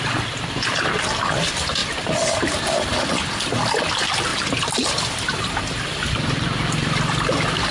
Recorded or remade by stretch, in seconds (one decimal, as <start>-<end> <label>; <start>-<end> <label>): 0.0-7.7 recorded